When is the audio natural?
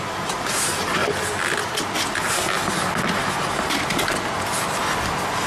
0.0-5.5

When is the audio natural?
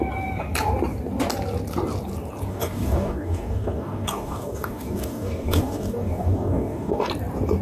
0.0-2.5; 7.1-7.6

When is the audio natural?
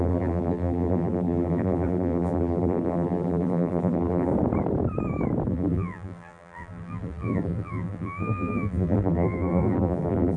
4.3-5.5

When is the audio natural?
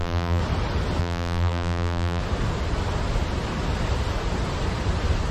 0.4-1.0; 2.2-5.3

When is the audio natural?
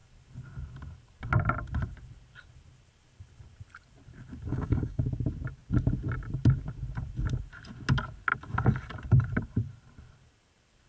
0.0-4.5; 5.0-10.9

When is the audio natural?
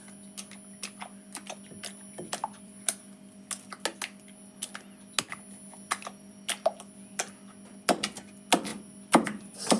0.0-2.4; 3.0-8.7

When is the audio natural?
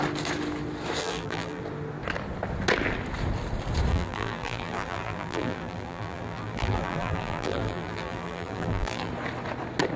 0.0-1.0; 1.6-3.9; 9.1-10.0